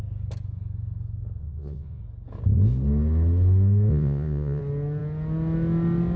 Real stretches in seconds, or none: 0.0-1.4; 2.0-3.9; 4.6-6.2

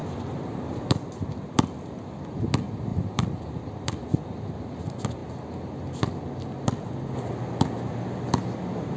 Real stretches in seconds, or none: 0.0-2.9; 3.4-9.0

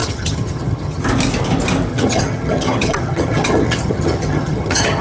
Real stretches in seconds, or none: 1.0-1.9

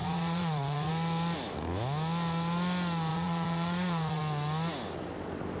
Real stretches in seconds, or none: 0.9-3.1; 4.2-5.6

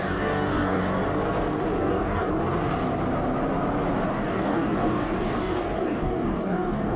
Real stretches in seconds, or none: 0.8-1.8; 2.3-4.1

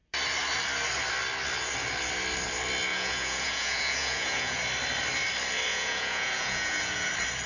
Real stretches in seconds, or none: 0.0-2.9; 4.6-5.7; 7.1-7.5

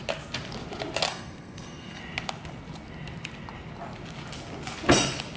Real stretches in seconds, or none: 0.0-1.1; 2.0-5.4

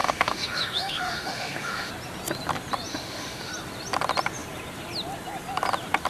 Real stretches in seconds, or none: 1.9-2.9; 3.5-6.1